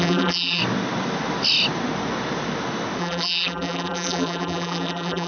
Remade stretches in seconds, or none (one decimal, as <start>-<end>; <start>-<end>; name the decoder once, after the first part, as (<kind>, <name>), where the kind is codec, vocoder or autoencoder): 0.0-0.6 (vocoder, BigVGAN v2); 3.0-5.3